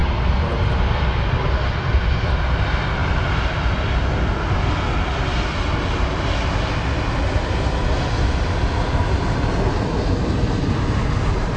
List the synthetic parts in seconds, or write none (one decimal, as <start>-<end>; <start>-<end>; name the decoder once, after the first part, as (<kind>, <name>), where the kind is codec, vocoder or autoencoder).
none